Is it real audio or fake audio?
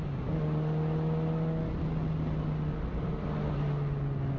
real